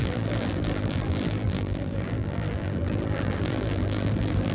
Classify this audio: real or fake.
fake